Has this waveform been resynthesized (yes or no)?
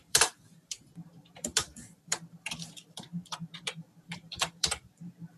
yes